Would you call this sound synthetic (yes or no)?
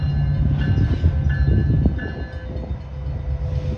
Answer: no